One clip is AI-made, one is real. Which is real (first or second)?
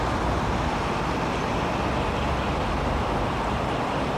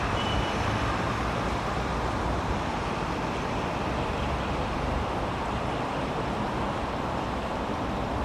first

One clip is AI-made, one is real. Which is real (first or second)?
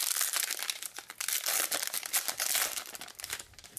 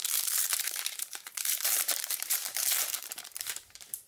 first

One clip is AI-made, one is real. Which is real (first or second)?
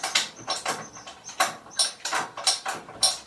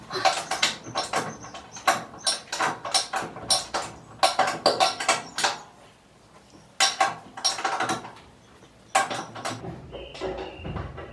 second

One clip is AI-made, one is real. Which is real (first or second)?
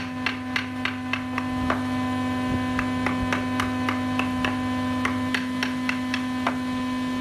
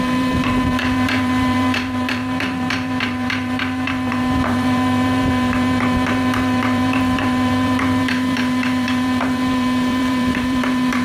first